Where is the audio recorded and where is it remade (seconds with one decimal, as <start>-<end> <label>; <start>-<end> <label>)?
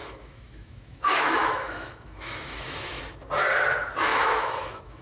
0.0-3.0 remade; 3.0-4.1 recorded; 4.1-5.0 remade